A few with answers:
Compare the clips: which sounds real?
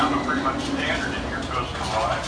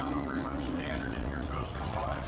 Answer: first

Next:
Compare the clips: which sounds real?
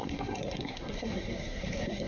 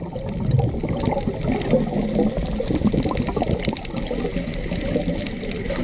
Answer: second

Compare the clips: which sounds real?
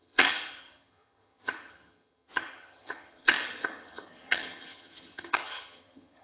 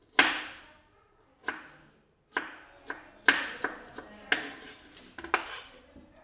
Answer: second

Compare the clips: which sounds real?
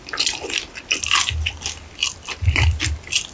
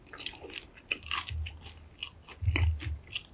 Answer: second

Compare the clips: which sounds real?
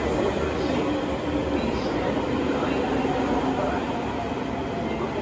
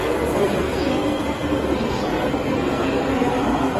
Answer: first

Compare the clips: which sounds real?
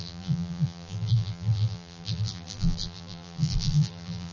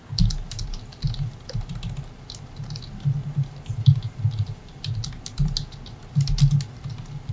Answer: second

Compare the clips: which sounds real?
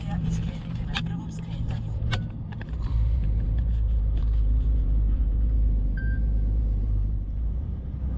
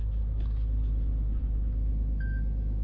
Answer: second